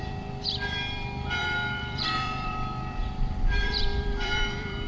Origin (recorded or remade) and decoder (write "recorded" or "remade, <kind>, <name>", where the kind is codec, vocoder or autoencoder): remade, vocoder, BigVGAN v2